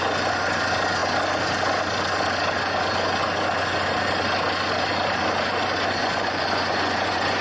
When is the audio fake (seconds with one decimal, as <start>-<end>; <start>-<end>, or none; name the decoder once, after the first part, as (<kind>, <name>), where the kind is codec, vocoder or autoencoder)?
6.0-7.4 (vocoder, Vocos)